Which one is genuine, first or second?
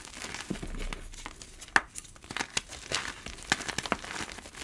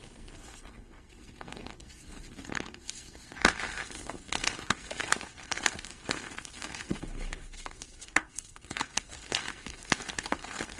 first